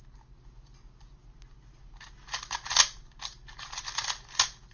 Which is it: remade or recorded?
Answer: recorded